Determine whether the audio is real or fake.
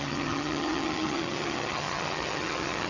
fake